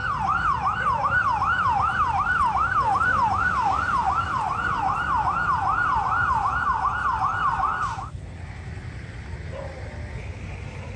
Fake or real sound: real